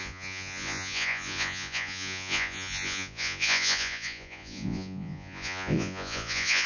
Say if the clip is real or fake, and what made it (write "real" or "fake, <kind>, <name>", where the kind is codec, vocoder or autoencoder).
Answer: fake, vocoder, Vocos